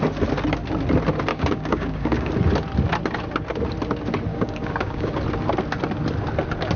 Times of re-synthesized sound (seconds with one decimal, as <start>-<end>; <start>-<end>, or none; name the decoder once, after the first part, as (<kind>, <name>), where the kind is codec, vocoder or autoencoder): 1.3-2.3 (codec, DAC); 4.3-5.2